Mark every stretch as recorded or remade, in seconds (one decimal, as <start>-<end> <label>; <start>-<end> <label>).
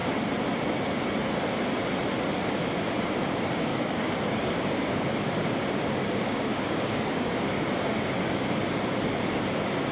0.0-3.7 recorded; 3.7-5.1 remade; 5.1-6.0 recorded; 6.0-8.6 remade; 8.6-9.9 recorded